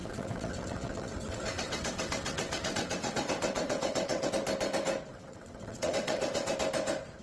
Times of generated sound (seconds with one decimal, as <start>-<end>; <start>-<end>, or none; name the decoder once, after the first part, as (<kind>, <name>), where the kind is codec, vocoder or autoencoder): 0.0-4.3 (vocoder, WaveNeXt); 5.1-6.5